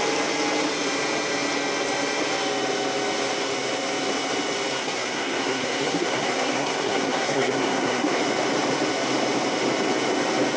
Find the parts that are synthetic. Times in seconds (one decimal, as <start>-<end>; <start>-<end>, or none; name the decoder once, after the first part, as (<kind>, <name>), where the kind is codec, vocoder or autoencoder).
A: 4.8-8.2 (codec, SNAC)